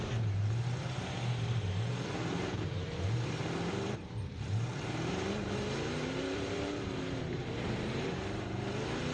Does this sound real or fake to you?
fake